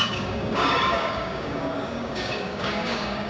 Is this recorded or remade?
remade